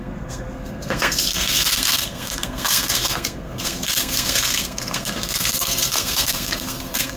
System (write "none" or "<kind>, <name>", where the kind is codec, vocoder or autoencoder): codec, SNAC